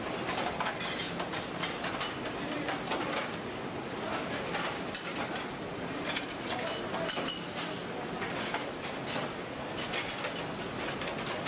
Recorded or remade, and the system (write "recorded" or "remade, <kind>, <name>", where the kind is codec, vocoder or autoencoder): recorded